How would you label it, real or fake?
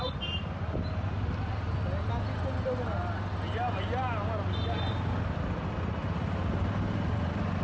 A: real